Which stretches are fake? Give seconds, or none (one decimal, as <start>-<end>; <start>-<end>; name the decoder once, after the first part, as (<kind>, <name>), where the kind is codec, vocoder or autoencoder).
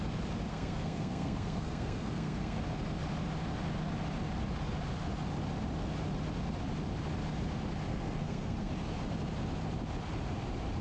0.5-2.6 (codec, SNAC); 7.9-8.7